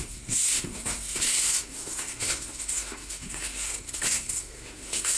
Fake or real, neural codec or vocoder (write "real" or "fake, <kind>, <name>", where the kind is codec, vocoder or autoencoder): fake, codec, SNAC